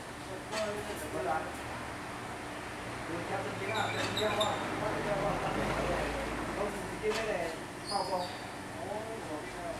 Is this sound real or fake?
real